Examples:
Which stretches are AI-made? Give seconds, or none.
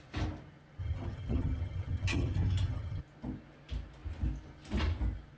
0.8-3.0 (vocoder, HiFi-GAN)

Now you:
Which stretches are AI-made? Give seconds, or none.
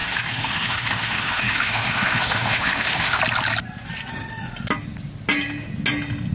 0.0-3.2 (autoencoder, DAC-VAE)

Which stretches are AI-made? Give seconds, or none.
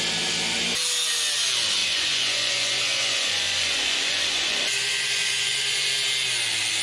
1.8-5.9 (vocoder, Vocos)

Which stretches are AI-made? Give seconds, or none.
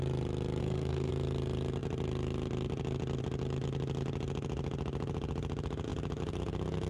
0.6-1.1 (codec, SNAC)